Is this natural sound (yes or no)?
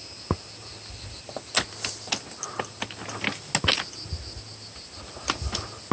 yes